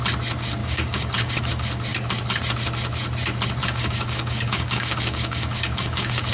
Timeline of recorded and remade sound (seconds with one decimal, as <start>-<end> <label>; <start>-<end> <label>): 0.0-0.6 recorded; 0.6-1.5 remade; 1.5-3.6 recorded; 3.6-6.3 remade